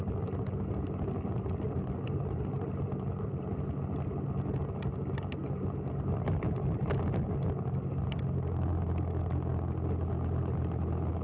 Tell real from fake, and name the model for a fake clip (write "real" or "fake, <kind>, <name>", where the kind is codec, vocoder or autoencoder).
real